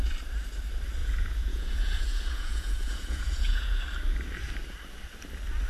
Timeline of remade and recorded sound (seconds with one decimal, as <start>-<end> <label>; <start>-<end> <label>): 0.0-1.0 recorded; 1.0-3.8 remade; 3.8-5.7 recorded